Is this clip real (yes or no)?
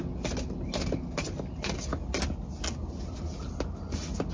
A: yes